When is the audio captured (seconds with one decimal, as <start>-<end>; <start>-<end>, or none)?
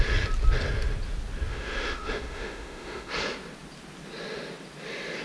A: 0.0-1.5; 3.1-5.2